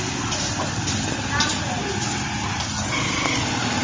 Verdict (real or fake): real